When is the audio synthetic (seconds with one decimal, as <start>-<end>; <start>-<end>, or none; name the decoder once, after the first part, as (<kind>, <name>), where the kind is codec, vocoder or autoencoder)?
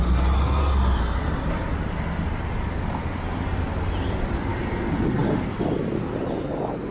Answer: none